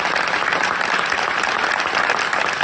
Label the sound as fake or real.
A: real